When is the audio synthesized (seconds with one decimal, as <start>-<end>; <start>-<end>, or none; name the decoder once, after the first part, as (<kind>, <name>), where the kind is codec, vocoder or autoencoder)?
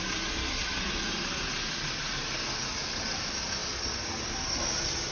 none